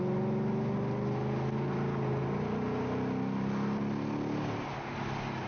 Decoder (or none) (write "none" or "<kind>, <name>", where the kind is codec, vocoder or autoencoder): none